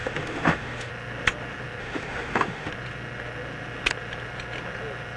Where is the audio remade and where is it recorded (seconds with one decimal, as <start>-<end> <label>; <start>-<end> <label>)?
0.0-0.9 remade; 0.9-1.8 recorded; 1.8-2.7 remade; 2.7-5.2 recorded